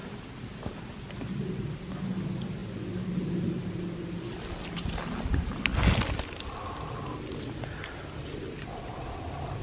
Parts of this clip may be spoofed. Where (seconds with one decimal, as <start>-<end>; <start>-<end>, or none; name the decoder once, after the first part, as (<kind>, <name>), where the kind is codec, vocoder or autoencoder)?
none